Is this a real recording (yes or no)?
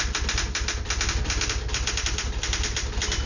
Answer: yes